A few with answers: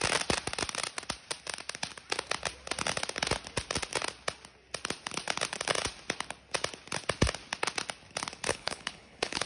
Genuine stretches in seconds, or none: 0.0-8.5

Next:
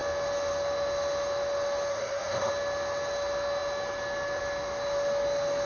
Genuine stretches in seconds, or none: 0.0-1.9; 2.5-5.7

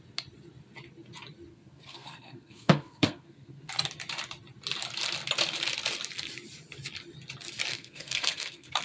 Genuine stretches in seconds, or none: 0.0-1.5; 3.7-7.7

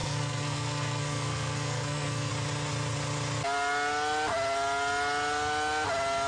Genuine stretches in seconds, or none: 2.3-6.3